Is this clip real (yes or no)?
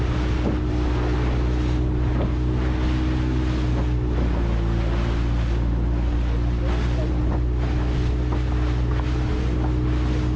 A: yes